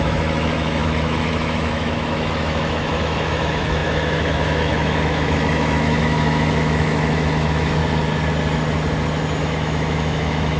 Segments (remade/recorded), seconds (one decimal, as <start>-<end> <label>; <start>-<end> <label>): 0.0-7.8 remade; 7.8-9.4 recorded; 9.4-10.6 remade